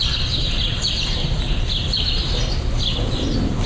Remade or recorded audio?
recorded